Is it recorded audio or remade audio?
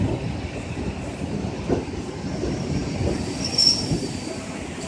recorded